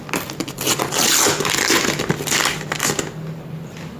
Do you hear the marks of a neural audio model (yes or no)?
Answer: no